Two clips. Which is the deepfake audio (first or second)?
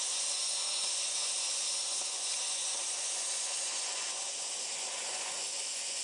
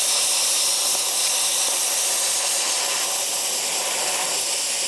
first